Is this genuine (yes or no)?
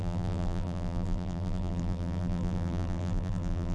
no